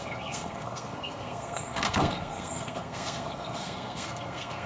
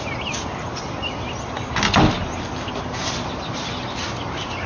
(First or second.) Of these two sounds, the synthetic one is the first